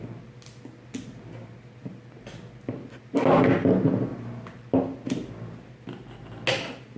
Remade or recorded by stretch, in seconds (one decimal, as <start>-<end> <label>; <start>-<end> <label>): 0.0-7.0 recorded